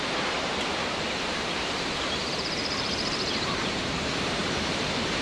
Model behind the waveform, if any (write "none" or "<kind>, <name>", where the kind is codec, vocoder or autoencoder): vocoder, BigVGAN v2